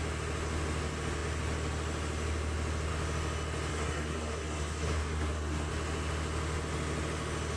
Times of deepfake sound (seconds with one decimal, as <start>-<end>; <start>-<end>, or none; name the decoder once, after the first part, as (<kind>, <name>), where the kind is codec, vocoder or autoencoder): 3.7-5.7 (codec, SNAC)

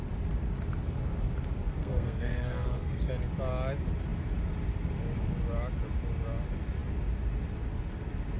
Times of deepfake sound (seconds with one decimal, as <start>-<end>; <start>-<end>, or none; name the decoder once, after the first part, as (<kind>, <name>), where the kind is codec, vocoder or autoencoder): 1.6-3.1 (codec, SNAC)

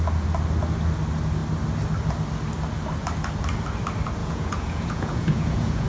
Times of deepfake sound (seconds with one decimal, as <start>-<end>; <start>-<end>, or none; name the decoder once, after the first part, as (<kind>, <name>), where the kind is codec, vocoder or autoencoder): 4.2-5.9 (vocoder, Vocos)